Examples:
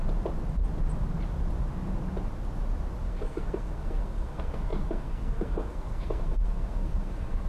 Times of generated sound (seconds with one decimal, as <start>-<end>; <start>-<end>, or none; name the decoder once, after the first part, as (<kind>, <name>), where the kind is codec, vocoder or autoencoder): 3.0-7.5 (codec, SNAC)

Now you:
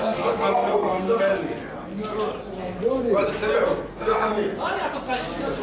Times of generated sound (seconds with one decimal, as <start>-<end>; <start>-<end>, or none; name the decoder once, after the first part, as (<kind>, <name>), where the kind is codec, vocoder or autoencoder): 0.0-1.3 (codec, SNAC); 3.9-4.3

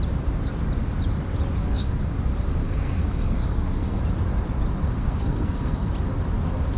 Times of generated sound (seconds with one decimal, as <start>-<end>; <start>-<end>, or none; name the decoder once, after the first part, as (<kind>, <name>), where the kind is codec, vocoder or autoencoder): 1.6-2.1 (codec, SNAC); 2.6-4.0; 4.8-5.9